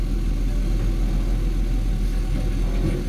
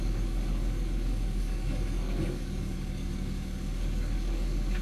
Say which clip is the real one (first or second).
first